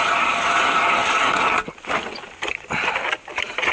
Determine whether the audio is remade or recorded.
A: recorded